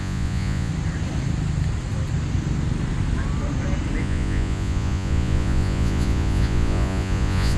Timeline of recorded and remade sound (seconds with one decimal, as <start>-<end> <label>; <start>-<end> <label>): 0.0-0.7 remade; 0.7-4.0 recorded; 4.0-7.6 remade